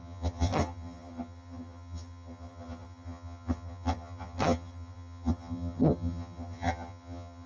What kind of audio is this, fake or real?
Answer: fake